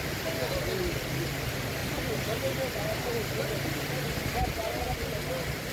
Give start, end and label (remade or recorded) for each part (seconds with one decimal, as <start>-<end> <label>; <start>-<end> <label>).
0.0-5.7 recorded